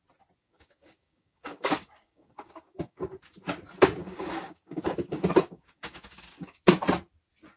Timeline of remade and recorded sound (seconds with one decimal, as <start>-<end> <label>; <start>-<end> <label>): 0.0-0.4 recorded; 0.4-3.1 remade; 3.1-4.0 recorded; 4.0-6.6 remade; 6.6-7.6 recorded